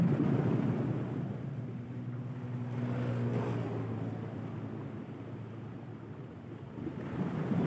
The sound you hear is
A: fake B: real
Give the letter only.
B